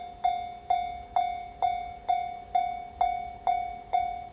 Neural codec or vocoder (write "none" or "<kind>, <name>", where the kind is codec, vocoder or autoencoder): none